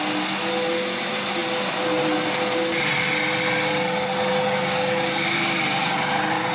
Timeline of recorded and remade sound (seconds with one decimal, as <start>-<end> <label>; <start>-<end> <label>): 0.0-6.5 recorded